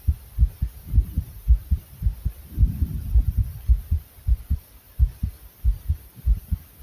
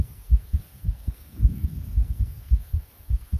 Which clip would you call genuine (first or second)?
first